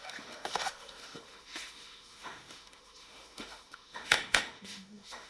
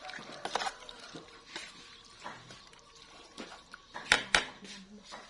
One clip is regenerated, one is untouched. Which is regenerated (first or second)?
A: first